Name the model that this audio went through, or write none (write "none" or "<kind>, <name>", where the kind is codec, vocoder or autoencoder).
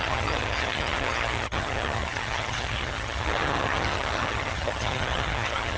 vocoder, HiFi-GAN